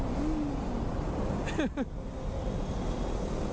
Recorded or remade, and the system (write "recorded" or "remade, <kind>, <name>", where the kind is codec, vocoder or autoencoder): recorded